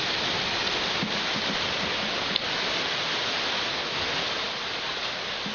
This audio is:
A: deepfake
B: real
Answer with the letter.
B